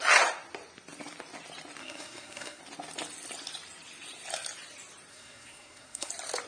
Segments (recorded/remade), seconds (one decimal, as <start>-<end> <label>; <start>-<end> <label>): 0.0-1.8 recorded; 1.8-2.6 remade; 2.6-5.1 recorded; 5.1-6.1 remade; 6.1-6.5 recorded